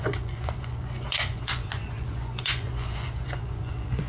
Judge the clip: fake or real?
fake